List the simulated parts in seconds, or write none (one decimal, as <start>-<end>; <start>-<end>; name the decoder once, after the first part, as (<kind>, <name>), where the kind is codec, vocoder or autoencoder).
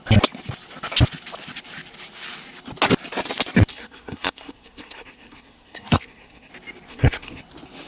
3.7-6.5 (codec, SNAC); 6.9-7.4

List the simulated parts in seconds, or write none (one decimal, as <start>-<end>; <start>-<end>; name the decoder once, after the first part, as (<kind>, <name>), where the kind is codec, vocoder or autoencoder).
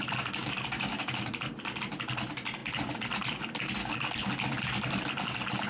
0.4-1.3 (codec, DAC); 3.8-4.3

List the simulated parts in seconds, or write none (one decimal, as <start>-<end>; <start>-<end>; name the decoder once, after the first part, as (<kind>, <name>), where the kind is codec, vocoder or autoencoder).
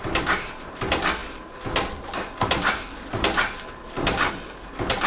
none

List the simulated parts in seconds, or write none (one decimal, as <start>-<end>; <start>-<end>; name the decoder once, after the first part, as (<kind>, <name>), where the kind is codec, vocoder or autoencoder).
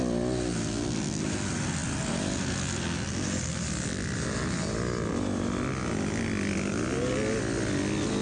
none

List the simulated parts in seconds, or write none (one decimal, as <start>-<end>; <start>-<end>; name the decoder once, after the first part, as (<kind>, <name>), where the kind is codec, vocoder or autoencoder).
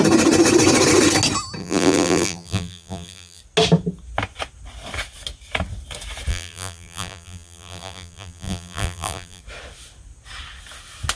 1.6-3.4 (vocoder, BigVGAN v2); 6.3-9.4